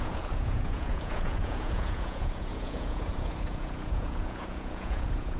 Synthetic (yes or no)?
yes